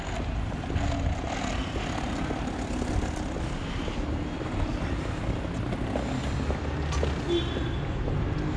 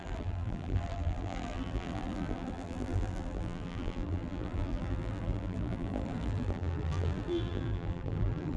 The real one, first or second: first